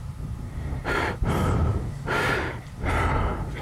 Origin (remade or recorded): remade